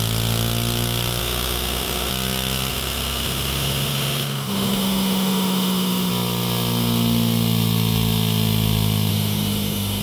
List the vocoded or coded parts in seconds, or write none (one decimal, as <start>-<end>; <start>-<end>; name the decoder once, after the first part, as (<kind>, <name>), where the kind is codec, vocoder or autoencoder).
1.2-2.1 (autoencoder, DAC-VAE); 2.7-6.1; 9.1-10.0